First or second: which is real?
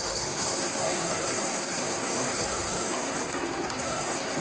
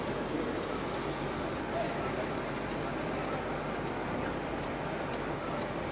second